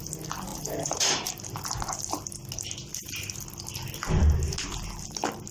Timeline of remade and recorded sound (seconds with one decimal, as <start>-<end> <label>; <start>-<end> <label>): 0.0-0.5 recorded; 0.5-1.6 remade; 1.6-5.5 recorded